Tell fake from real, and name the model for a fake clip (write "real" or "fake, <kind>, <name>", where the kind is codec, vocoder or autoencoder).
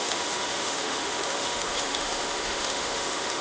fake, autoencoder, DAC-VAE